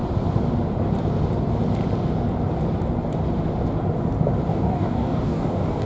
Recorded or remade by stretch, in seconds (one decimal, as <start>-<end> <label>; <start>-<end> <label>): 0.0-4.5 recorded; 4.5-5.9 remade